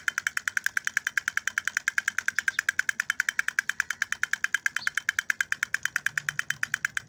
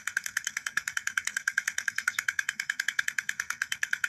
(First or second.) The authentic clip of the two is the first